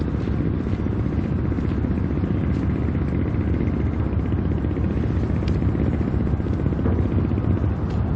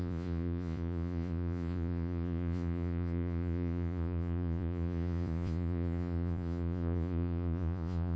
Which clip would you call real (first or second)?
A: first